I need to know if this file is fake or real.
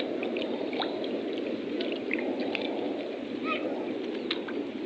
real